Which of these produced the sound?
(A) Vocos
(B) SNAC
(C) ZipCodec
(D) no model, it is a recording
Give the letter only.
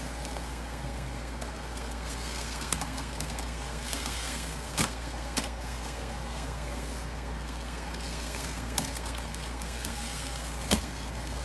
B